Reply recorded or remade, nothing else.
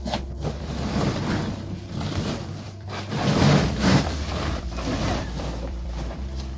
remade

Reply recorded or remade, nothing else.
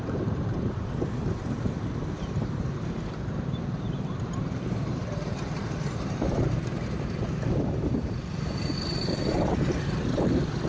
remade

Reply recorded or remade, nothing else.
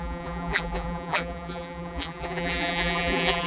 remade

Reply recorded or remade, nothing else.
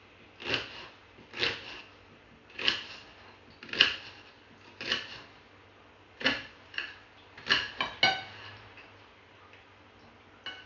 recorded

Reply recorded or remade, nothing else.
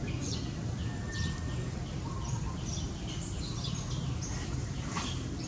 remade